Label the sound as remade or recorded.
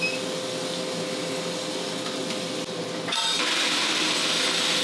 recorded